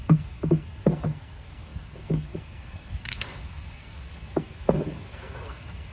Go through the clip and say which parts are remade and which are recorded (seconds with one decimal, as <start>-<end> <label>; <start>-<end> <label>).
0.0-5.9 remade